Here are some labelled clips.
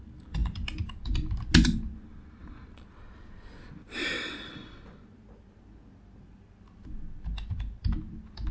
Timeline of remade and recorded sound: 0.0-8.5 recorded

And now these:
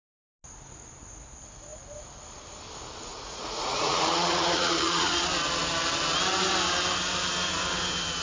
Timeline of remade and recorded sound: 0.0-3.1 recorded; 3.1-5.1 remade; 5.1-8.2 recorded

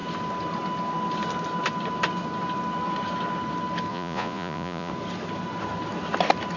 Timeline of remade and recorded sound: 0.0-3.9 recorded; 3.9-4.9 remade; 4.9-6.6 recorded

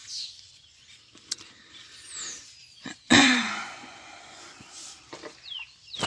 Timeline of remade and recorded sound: 0.0-0.8 remade; 0.8-2.8 recorded; 2.8-4.9 remade; 4.9-6.1 recorded

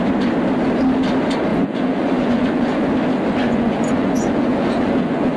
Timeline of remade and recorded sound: 0.0-1.5 recorded; 1.5-2.9 remade; 2.9-3.4 recorded; 3.4-5.4 remade